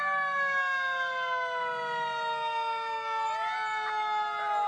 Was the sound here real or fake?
real